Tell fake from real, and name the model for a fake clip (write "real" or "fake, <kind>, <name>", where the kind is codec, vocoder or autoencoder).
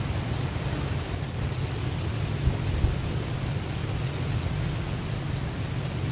real